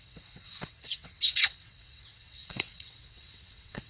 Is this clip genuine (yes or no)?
no